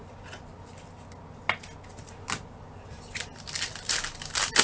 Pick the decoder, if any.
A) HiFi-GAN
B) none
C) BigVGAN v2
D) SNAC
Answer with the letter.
B